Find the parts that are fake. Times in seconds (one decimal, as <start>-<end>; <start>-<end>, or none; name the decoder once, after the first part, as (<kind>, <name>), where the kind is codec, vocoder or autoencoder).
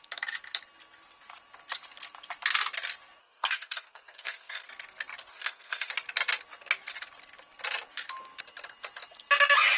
3.2-4.7 (codec, SNAC); 5.3-5.9